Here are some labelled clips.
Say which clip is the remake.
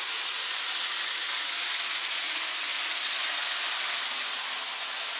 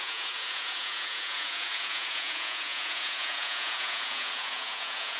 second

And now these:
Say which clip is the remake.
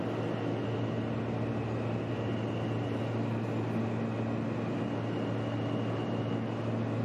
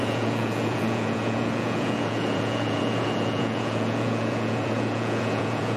second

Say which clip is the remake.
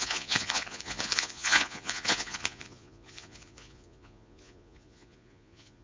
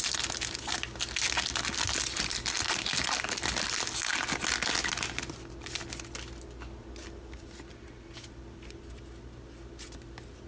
first